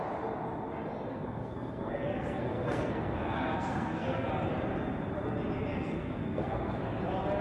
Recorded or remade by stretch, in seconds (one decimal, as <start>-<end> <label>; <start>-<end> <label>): 0.0-1.1 recorded; 1.1-4.3 remade; 4.3-5.7 recorded; 5.7-6.8 remade; 6.8-7.4 recorded